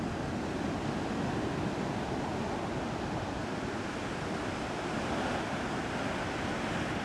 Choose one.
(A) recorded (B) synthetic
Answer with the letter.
A